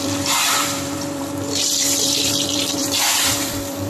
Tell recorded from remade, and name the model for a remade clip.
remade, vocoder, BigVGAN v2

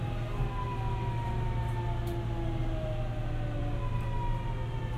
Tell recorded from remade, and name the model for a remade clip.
recorded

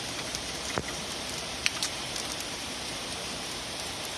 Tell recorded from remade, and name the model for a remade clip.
remade, vocoder, BigVGAN v2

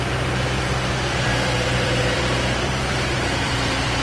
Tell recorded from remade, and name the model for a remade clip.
remade, vocoder, BigVGAN v2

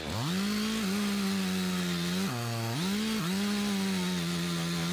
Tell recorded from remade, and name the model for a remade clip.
recorded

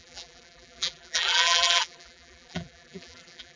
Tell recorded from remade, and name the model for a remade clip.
remade, vocoder, BigVGAN v2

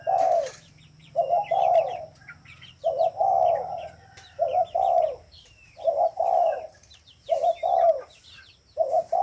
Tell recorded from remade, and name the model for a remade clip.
remade, vocoder, BigVGAN v2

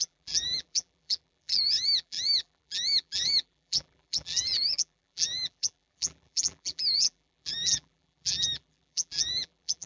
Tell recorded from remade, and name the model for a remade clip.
remade, vocoder, BigVGAN v2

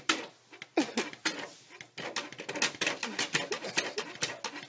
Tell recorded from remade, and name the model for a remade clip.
recorded